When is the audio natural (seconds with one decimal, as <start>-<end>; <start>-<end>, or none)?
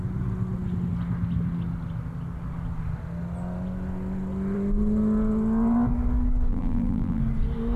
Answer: 0.0-6.5; 7.2-7.8